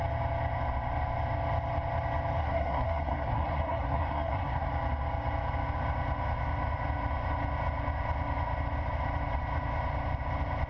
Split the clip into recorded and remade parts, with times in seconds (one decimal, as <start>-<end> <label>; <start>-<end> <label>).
0.0-2.4 recorded; 2.4-4.7 remade; 4.7-10.7 recorded

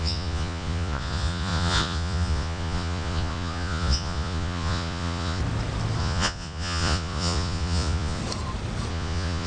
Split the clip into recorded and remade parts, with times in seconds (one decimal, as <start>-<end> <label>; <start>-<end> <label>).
0.0-5.4 remade; 5.4-6.0 recorded; 6.0-8.2 remade; 8.2-8.9 recorded; 8.9-9.5 remade

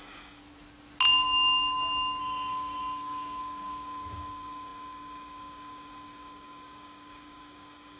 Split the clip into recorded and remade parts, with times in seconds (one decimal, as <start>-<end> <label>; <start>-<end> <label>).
0.0-0.4 remade; 0.4-2.2 recorded; 2.2-8.0 remade

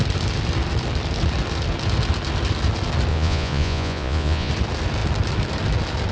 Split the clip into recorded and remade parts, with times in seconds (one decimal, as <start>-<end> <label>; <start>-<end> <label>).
0.0-3.1 recorded; 3.1-4.5 remade; 4.5-6.1 recorded

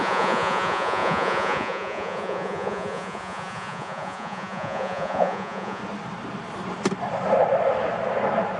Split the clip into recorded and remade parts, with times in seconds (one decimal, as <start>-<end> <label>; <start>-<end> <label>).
0.0-5.8 remade; 5.8-8.6 recorded